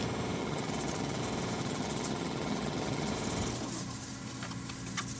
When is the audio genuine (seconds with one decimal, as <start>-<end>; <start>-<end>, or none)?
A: 0.0-0.4; 1.2-1.6; 3.1-5.2